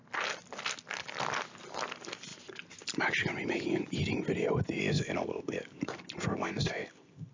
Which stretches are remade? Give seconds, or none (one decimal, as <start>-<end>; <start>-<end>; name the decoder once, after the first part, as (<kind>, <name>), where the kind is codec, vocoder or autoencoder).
4.8-5.8 (codec, ZipCodec); 6.3-7.3